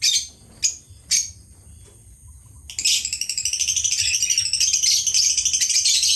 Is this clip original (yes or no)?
yes